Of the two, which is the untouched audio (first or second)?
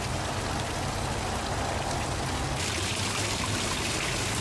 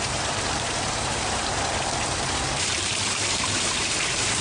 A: first